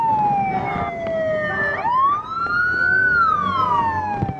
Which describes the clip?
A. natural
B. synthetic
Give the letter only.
A